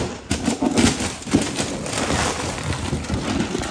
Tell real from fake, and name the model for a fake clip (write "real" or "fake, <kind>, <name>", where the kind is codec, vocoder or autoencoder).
real